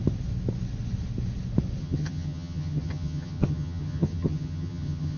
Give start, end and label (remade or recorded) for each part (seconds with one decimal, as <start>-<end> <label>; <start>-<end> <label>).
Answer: 0.0-1.8 recorded; 1.8-5.2 remade